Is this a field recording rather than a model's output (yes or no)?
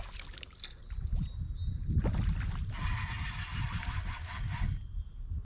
yes